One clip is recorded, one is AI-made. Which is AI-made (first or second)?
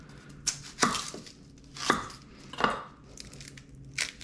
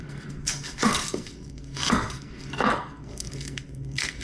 second